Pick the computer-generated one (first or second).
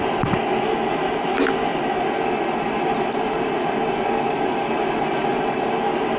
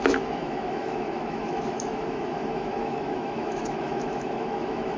second